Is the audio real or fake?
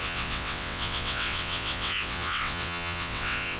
fake